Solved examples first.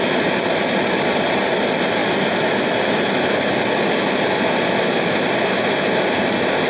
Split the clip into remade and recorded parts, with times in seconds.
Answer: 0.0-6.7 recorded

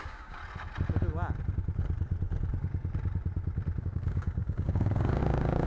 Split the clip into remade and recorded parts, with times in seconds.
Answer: 0.0-0.4 remade; 0.4-3.8 recorded; 3.8-5.7 remade

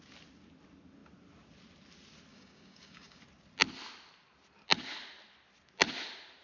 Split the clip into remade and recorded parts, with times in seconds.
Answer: 0.0-2.3 recorded; 2.3-3.2 remade; 3.2-6.4 recorded

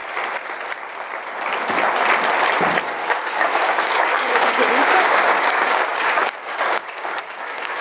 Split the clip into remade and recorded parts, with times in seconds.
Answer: 0.0-3.0 recorded; 3.0-7.8 remade

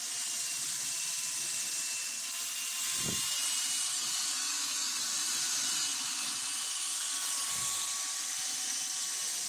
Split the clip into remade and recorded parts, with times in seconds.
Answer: 0.0-3.9 recorded; 3.9-5.1 remade; 5.1-6.7 recorded; 6.7-7.5 remade; 7.5-9.5 recorded